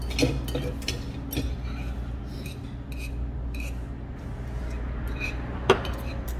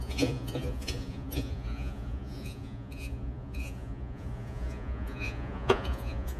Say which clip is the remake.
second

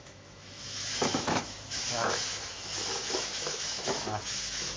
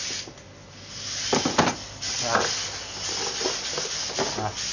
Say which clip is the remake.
first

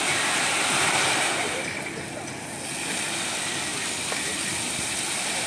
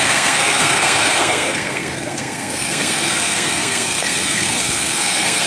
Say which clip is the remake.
second